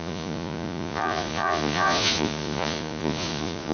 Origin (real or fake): fake